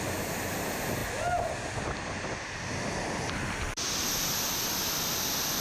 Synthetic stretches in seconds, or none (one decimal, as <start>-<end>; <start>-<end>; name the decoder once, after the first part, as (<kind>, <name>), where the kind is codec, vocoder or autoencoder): none